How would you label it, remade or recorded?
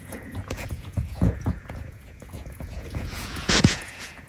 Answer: remade